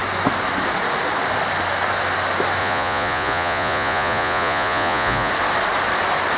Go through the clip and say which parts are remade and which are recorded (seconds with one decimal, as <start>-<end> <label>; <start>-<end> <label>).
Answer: 0.0-2.6 recorded; 2.6-5.3 remade; 5.3-6.4 recorded

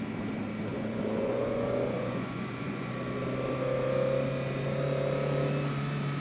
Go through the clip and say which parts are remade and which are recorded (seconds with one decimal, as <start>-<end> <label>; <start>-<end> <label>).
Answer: 0.0-0.7 recorded; 0.7-2.9 remade; 2.9-6.2 recorded

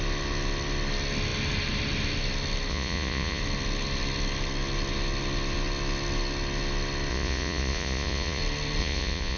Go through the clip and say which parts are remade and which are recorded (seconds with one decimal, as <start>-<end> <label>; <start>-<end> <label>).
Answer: 0.0-2.7 recorded; 2.7-3.4 remade; 3.4-7.1 recorded; 7.1-8.4 remade; 8.4-8.8 recorded; 8.8-9.4 remade

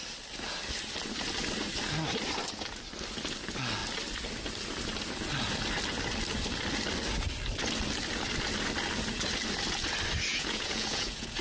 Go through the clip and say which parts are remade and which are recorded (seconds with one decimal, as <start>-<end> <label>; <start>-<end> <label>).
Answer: 0.0-10.3 recorded; 10.3-11.4 remade

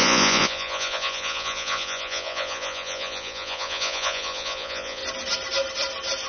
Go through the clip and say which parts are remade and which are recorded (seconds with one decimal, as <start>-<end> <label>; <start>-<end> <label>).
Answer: 0.0-5.0 remade; 5.0-6.3 recorded

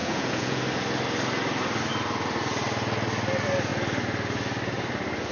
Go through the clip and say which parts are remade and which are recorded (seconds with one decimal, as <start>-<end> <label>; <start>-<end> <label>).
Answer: 0.0-0.6 remade; 0.6-5.3 recorded

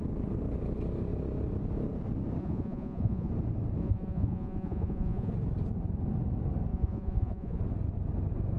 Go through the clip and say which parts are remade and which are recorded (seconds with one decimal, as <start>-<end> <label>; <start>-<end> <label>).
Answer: 0.0-2.4 recorded; 2.4-3.3 remade; 3.3-3.8 recorded; 3.8-5.3 remade; 5.3-6.7 recorded; 6.7-7.6 remade; 7.6-8.6 recorded